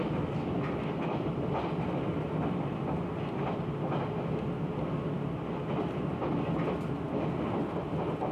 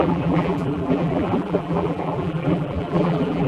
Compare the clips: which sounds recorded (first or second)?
first